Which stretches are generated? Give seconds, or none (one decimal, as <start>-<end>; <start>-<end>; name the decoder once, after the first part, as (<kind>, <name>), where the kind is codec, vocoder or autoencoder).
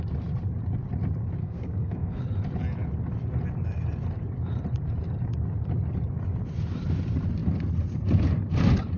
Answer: 1.4-2.2 (codec, SNAC)